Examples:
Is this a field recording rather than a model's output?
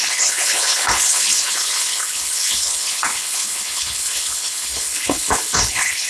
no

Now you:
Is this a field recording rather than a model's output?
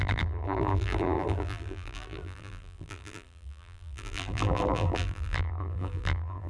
no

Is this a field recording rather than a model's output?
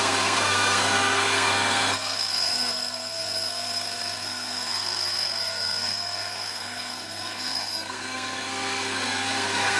no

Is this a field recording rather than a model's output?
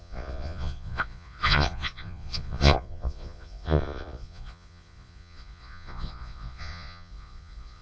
no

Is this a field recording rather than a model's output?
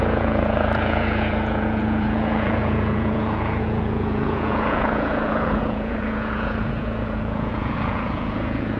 no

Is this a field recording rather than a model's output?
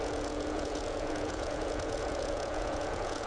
no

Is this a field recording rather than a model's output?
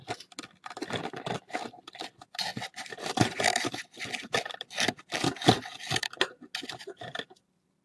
yes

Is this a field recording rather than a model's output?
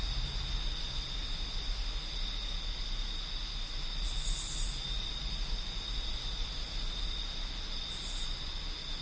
yes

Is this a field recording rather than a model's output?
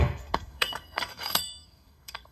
no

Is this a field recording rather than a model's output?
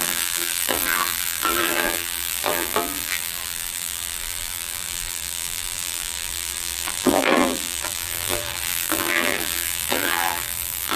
no